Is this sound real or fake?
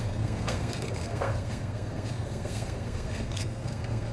fake